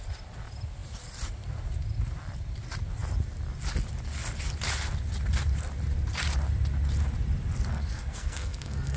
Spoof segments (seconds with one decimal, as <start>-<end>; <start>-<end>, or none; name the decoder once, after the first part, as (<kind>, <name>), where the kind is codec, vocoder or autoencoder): 7.7-9.0 (codec, SNAC)